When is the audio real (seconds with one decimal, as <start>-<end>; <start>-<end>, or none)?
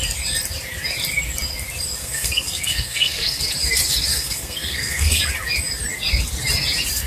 0.0-2.0; 3.4-4.1; 5.2-7.1